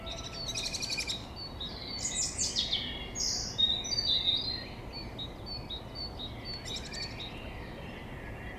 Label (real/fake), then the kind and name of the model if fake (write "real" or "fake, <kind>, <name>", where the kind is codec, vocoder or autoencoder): real